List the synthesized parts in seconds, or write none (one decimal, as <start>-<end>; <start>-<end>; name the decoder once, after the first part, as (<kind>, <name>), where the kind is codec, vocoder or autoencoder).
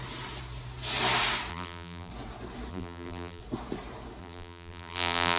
1.5-2.1 (vocoder, BigVGAN v2); 2.7-3.4; 4.2-5.4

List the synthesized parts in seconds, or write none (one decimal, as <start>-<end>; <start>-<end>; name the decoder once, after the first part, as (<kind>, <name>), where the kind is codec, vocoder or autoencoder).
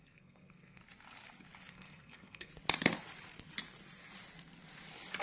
0.0-0.8 (codec, SNAC); 1.7-2.5